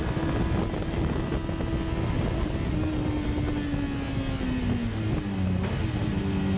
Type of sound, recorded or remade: recorded